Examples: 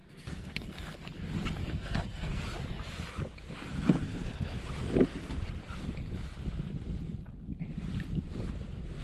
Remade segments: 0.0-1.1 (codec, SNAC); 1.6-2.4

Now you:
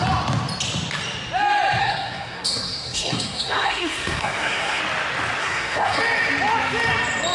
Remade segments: 1.8-4.8 (codec, SNAC); 5.4-6.0

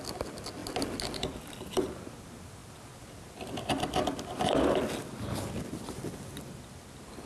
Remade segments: none

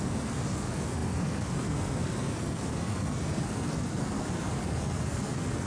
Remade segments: 0.0-5.7 (codec, SNAC)

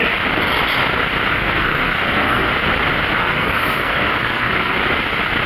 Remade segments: 1.3-2.5 (codec, SNAC); 3.2-4.8

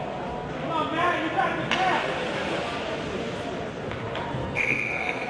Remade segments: 4.4-5.3 (codec, SNAC)

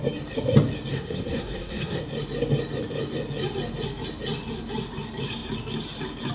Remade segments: 0.9-2.0 (codec, SNAC)